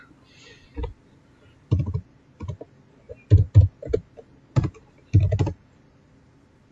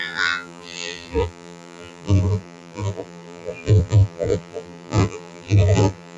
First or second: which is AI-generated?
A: second